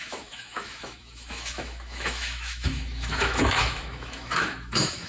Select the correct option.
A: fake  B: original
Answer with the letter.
A